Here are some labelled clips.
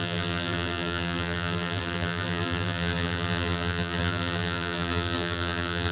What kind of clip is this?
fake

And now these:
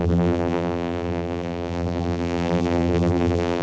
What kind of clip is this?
fake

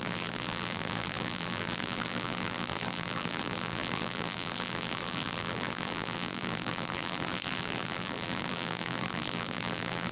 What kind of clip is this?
fake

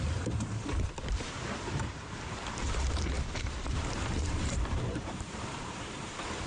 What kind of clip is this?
fake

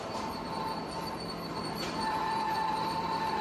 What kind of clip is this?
real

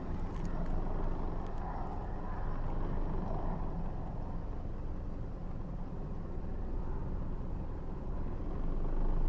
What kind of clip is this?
real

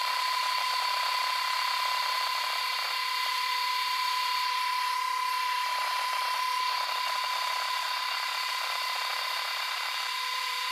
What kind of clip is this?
fake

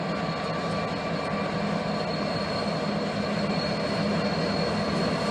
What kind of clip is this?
real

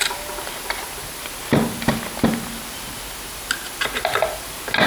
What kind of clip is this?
real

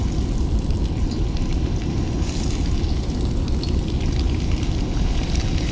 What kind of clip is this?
real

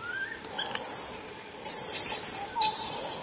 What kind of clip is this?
real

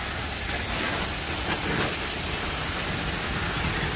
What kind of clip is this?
real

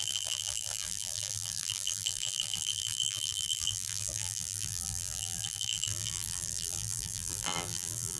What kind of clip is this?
fake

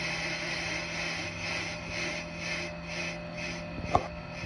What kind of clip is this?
real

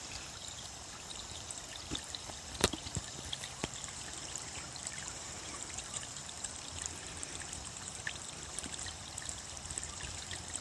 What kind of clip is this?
fake